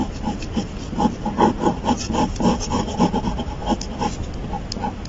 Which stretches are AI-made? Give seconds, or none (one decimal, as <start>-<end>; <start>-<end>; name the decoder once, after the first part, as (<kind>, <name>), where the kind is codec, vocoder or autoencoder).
0.0-3.1 (vocoder, BigVGAN v2)